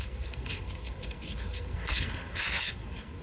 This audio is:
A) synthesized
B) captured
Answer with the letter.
A